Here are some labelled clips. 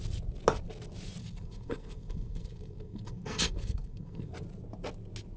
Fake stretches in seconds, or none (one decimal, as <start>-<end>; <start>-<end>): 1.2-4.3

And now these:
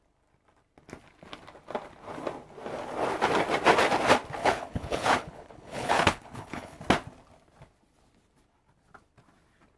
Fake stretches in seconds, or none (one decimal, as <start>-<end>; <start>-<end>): 4.4-6.8

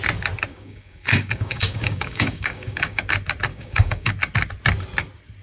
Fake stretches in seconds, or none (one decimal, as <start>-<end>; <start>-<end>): 0.5-3.0; 3.5-4.1

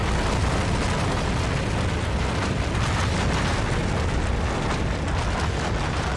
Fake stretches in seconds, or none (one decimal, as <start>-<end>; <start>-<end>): none

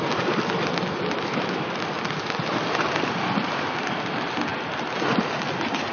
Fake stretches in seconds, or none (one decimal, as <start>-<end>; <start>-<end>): 1.3-1.8